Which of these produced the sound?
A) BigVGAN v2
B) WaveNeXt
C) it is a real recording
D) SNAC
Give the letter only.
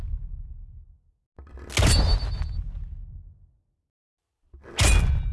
C